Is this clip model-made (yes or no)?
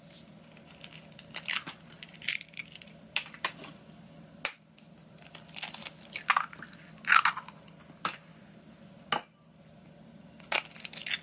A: no